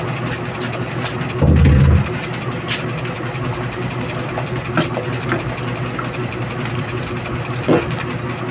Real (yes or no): yes